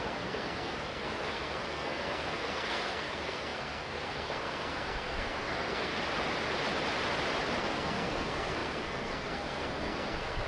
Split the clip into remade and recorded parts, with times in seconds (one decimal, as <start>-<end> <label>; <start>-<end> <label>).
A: 0.0-5.9 remade; 5.9-7.6 recorded; 7.6-10.5 remade

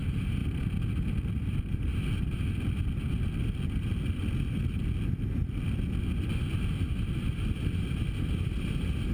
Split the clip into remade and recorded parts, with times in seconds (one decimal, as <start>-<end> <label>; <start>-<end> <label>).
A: 0.0-9.1 recorded